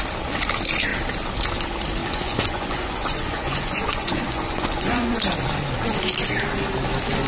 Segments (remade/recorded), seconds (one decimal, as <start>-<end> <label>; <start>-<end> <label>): 0.0-2.0 recorded; 2.0-5.2 remade; 5.2-7.3 recorded